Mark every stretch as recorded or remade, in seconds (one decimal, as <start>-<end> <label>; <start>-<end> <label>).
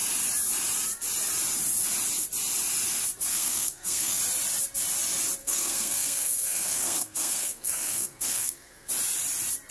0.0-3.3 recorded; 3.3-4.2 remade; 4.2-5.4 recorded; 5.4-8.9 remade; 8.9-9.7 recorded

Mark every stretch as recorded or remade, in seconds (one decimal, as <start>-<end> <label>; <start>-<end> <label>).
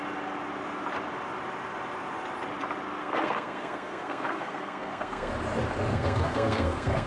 0.0-3.0 recorded; 3.0-5.3 remade; 5.3-5.9 recorded; 5.9-7.1 remade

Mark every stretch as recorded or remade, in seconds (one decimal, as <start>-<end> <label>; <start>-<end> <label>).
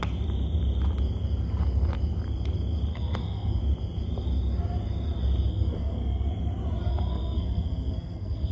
0.0-2.9 recorded; 2.9-3.6 remade; 3.6-5.5 recorded; 5.5-6.3 remade; 6.3-6.9 recorded; 6.9-8.5 remade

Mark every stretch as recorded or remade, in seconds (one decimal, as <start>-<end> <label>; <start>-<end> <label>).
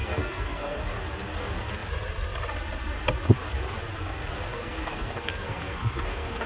0.0-0.8 remade; 0.8-4.5 recorded; 4.5-6.5 remade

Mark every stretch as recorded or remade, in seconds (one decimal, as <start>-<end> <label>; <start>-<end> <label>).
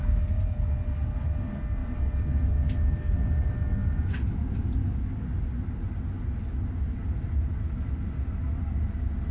0.0-9.3 recorded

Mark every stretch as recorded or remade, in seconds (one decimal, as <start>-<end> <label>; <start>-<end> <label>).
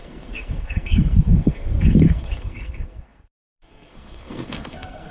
0.0-5.1 remade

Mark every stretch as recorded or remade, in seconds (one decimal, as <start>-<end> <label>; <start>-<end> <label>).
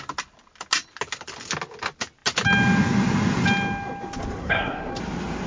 0.0-4.4 recorded; 4.4-4.9 remade; 4.9-5.5 recorded